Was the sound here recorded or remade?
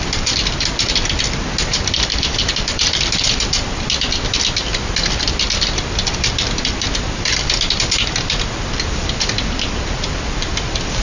recorded